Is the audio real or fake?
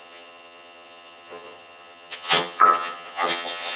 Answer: fake